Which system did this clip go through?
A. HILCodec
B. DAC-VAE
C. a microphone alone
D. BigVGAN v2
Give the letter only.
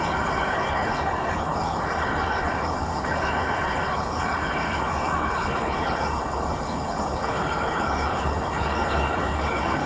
A